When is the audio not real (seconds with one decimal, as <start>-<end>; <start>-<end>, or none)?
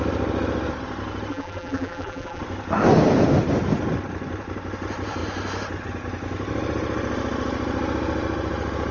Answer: 1.3-2.4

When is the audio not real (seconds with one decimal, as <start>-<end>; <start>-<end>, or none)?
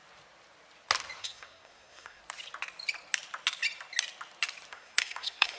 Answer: 1.2-2.2; 4.7-5.6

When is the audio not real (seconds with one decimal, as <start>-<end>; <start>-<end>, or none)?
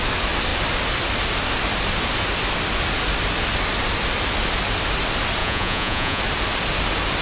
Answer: 5.4-6.2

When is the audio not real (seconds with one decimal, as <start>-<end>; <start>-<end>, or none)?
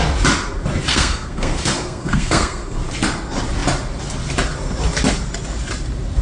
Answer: 0.9-2.8